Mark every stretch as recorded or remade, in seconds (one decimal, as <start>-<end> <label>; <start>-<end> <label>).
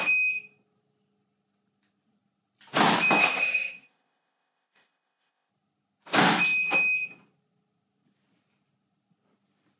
0.0-3.2 recorded; 3.2-5.5 remade; 5.5-9.8 recorded